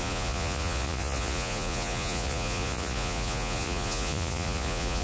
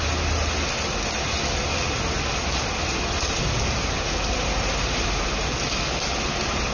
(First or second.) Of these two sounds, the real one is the second